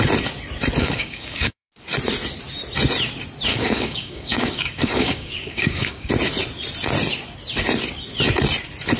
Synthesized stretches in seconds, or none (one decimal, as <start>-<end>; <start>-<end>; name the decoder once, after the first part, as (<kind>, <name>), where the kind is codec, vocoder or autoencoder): 0.8-1.7 (codec, DAC); 3.5-6.1